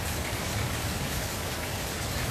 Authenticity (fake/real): fake